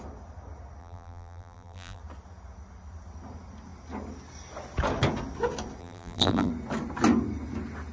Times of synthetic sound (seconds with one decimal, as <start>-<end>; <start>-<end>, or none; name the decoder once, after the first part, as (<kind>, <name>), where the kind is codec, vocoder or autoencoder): 0.8-2.0 (vocoder, BigVGAN v2); 5.8-6.5